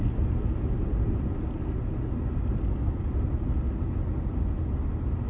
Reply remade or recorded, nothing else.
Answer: recorded